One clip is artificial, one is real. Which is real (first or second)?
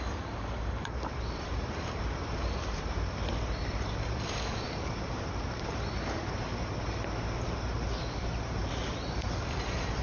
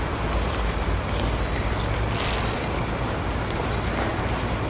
second